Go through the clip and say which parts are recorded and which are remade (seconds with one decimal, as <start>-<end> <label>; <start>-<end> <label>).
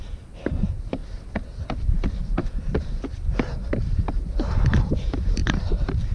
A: 0.0-5.4 recorded; 5.4-6.1 remade